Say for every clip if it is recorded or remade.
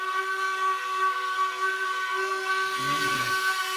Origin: remade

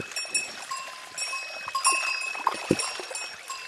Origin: recorded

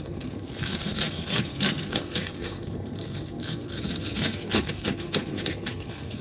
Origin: remade